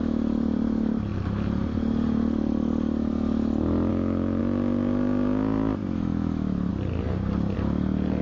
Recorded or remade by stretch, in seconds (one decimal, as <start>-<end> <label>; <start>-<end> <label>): 0.0-3.9 recorded; 3.9-4.4 remade; 4.4-5.8 recorded; 5.8-6.7 remade; 6.7-8.2 recorded